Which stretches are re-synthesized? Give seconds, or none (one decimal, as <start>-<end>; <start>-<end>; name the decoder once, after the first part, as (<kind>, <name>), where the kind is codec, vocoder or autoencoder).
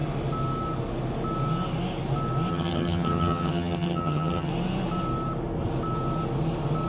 2.5-4.5 (vocoder, HiFi-GAN)